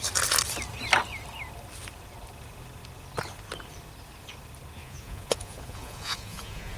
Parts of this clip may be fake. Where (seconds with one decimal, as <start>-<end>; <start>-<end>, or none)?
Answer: 4.8-6.8